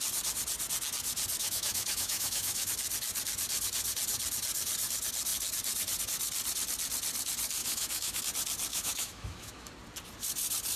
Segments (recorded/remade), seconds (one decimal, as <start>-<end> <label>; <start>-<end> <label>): 0.0-1.4 recorded; 1.4-2.7 remade; 2.7-7.6 recorded; 7.6-8.2 remade; 8.2-8.7 recorded; 8.7-9.7 remade; 9.7-10.8 recorded